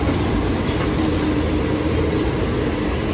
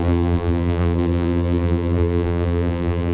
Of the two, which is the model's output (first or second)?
second